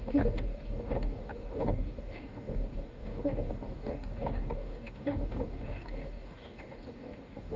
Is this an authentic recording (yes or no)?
no